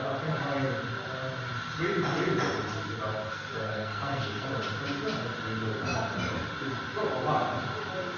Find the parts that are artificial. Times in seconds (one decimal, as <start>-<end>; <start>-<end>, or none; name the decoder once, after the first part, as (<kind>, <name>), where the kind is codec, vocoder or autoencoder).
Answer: 3.3-4.5 (codec, SNAC)